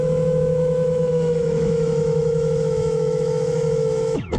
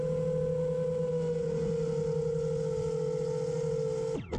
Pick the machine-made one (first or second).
first